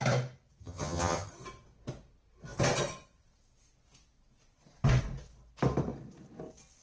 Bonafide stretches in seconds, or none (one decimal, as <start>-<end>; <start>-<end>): 0.0-0.6; 1.3-6.8